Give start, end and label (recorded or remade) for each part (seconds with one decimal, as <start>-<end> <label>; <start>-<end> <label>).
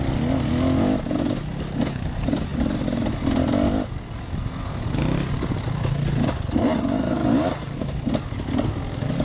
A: 0.0-9.2 recorded